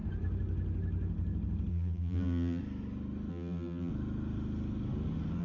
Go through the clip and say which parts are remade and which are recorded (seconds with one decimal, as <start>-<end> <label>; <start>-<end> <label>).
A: 0.0-1.7 recorded; 1.7-2.6 remade; 2.6-3.3 recorded; 3.3-3.9 remade; 3.9-5.4 recorded